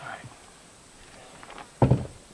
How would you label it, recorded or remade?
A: recorded